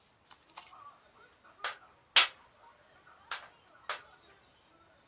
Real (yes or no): yes